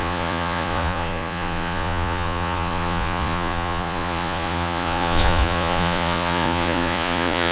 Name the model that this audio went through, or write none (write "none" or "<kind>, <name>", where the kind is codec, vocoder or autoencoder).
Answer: vocoder, Vocos